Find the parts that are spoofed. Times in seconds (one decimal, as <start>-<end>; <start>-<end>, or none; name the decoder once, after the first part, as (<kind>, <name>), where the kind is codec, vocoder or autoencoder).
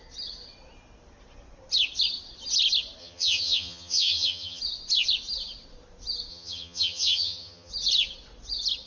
3.0-4.6 (vocoder, HiFi-GAN); 6.3-7.7